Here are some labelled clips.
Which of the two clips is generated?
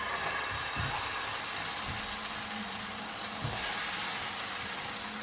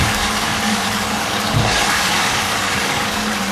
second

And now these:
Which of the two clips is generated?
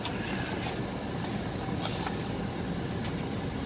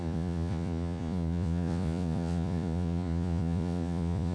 second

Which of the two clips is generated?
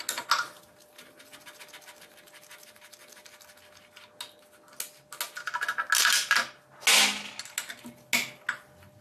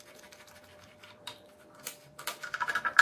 second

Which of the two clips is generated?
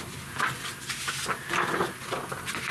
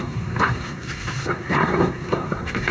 second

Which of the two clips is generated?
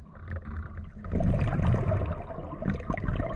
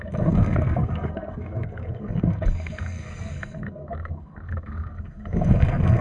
second